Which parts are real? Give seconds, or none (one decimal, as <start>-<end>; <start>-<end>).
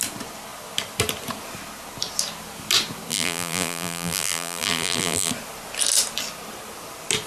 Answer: 0.0-3.1; 5.3-7.3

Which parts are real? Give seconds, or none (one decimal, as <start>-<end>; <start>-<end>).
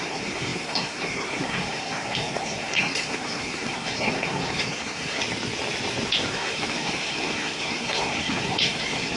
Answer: 5.2-6.3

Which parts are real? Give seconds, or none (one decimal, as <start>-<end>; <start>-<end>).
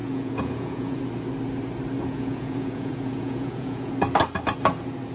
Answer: 1.0-2.0; 3.9-5.1